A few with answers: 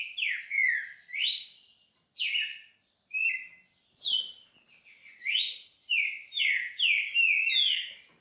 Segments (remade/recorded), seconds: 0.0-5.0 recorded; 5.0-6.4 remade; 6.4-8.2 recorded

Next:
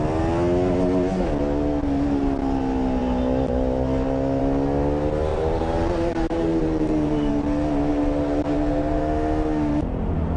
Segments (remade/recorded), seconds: 0.0-5.3 recorded; 5.3-7.3 remade; 7.3-7.9 recorded; 7.9-9.0 remade; 9.0-10.4 recorded

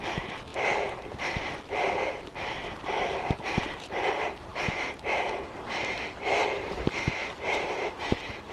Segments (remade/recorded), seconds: 0.0-8.5 remade

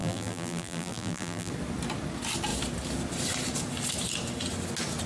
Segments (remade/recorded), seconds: 0.0-1.5 remade; 1.5-5.1 recorded

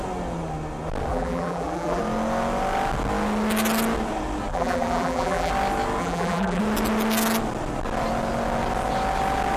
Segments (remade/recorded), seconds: 0.0-1.1 recorded; 1.1-2.0 remade; 2.0-4.5 recorded; 4.5-5.5 remade; 5.5-6.0 recorded; 6.0-6.6 remade; 6.6-9.6 recorded